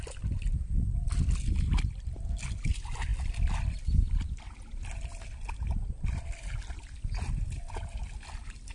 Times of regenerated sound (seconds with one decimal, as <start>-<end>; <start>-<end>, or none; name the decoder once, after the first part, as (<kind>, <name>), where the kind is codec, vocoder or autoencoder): none